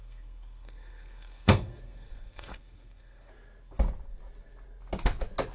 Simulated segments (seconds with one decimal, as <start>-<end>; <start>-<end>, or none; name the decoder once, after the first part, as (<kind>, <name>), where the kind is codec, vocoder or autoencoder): 0.0-3.3 (codec, SNAC)